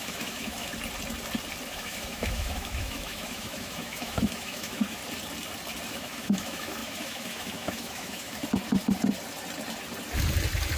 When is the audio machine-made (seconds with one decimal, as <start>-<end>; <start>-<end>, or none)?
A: 0.0-0.7; 1.7-5.0; 5.9-8.4